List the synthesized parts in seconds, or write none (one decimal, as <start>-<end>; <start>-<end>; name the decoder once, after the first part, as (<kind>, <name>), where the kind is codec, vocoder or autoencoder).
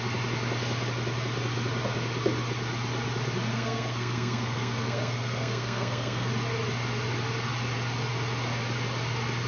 3.5-6.3 (codec, SNAC)